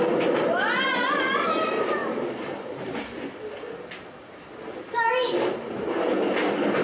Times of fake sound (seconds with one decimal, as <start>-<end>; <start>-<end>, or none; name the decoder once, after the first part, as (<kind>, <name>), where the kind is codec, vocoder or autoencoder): none